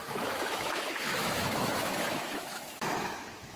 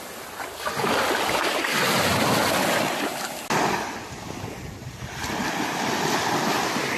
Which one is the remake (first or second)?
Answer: first